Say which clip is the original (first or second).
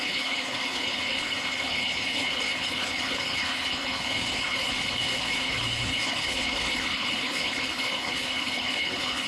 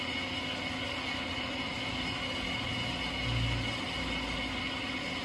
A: second